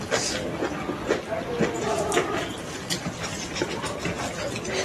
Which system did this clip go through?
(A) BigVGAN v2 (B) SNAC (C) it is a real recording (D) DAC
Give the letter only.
C